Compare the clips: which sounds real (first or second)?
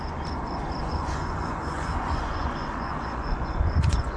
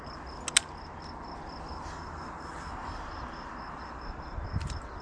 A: second